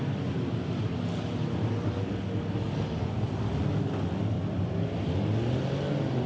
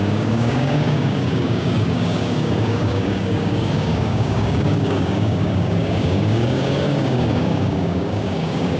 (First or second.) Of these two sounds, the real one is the first